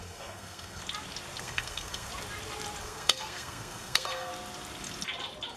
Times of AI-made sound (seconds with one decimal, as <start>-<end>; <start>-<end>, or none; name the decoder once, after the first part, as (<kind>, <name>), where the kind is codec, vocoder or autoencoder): 0.0-0.8 (codec, SNAC); 1.4-2.1; 2.8-4.3